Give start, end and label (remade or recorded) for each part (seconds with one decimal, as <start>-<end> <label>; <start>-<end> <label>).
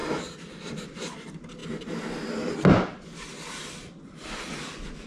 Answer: 0.0-1.6 remade; 1.6-4.5 recorded; 4.5-5.1 remade